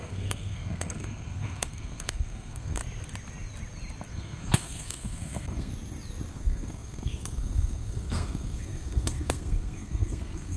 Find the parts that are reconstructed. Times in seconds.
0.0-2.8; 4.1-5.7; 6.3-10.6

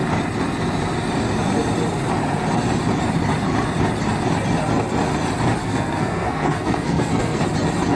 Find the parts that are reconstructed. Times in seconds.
5.6-7.4

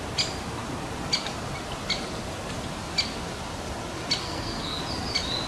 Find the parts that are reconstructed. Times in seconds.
4.2-4.8

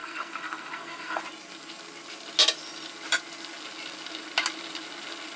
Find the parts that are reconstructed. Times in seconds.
0.0-1.2

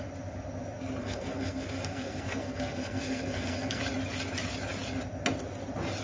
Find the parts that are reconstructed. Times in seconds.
1.0-3.8